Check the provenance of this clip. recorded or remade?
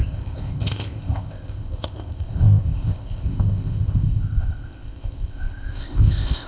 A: remade